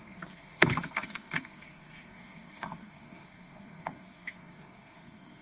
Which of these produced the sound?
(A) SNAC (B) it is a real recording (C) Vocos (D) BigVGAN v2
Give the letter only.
A